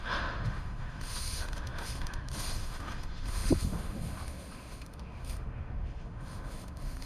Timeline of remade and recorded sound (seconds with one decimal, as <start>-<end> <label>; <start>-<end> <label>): 0.0-7.1 remade